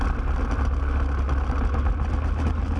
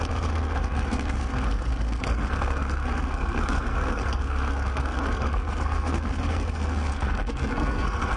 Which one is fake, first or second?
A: second